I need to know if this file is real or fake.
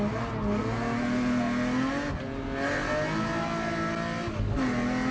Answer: real